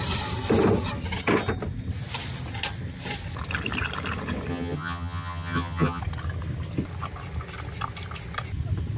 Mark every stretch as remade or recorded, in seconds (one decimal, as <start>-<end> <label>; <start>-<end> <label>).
0.0-4.5 recorded; 4.5-6.0 remade; 6.0-9.0 recorded